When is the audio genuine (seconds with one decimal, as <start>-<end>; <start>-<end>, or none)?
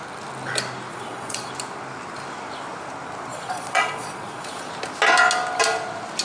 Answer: 0.0-0.9; 1.5-3.3; 4.7-6.2